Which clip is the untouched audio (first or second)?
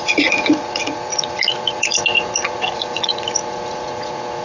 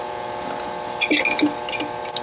second